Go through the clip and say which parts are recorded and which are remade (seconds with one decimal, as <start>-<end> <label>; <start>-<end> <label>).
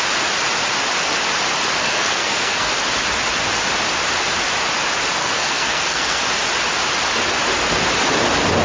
0.0-1.8 recorded; 1.8-2.7 remade; 2.7-5.2 recorded; 5.2-6.2 remade; 6.2-8.6 recorded